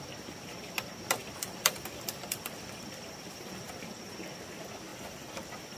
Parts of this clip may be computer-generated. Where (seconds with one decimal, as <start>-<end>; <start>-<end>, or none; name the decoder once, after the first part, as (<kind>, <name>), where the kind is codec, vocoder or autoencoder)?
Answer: 1.2-3.8 (vocoder, BigVGAN v2); 4.9-5.8